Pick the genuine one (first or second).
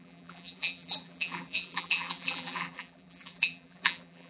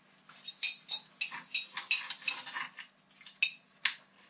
second